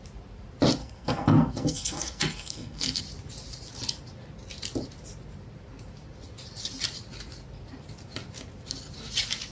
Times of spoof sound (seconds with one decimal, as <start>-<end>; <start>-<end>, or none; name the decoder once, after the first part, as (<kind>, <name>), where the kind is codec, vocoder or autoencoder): 0.8-3.0 (codec, SNAC)